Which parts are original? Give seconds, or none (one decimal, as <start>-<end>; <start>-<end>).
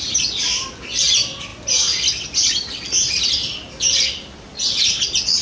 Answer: 0.0-5.4